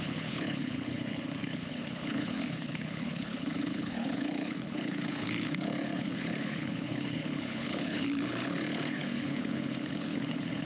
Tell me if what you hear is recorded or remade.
remade